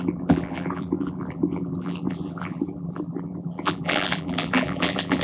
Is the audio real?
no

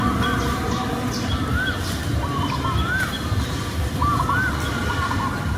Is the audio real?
yes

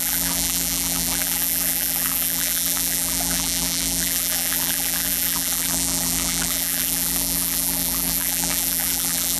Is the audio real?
no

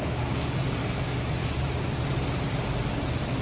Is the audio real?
no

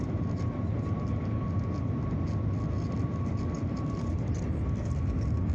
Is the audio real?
yes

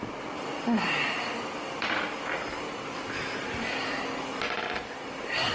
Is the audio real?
yes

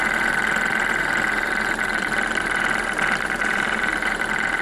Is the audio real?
no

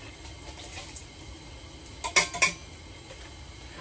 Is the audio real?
yes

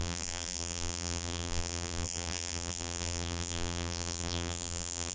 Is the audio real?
no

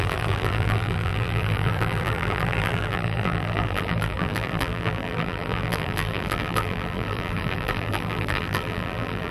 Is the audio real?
no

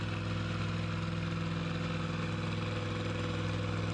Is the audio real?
yes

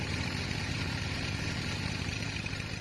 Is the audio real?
no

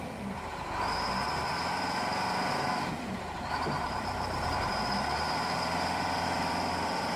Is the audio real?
no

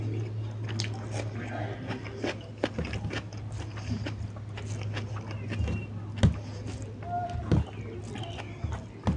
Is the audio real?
yes